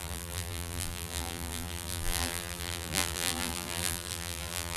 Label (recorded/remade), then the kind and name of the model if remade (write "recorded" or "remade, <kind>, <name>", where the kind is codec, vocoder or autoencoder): remade, vocoder, BigVGAN v2